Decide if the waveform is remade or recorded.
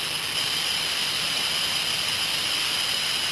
recorded